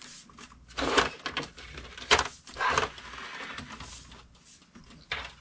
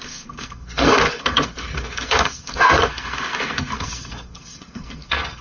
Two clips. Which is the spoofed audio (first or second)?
second